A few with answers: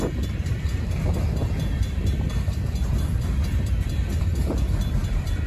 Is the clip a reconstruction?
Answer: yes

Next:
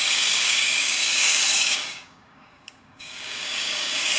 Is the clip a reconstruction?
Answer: yes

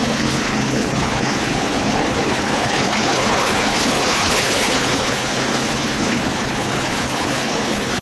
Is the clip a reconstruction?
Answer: yes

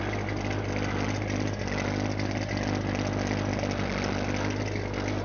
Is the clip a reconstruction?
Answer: no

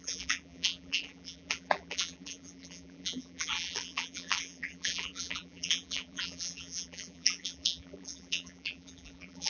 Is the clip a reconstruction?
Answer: yes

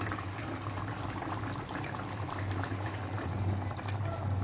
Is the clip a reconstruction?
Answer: yes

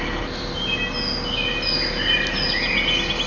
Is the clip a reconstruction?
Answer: no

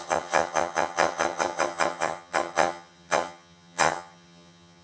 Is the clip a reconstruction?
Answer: yes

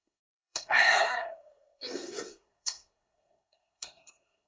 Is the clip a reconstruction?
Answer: yes